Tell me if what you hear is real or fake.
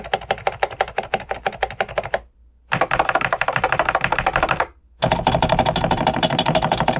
real